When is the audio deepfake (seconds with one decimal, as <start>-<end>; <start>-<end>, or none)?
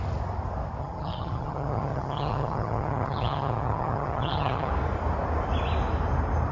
0.8-4.7